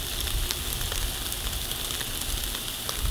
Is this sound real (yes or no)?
yes